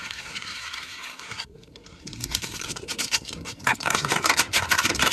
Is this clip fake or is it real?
fake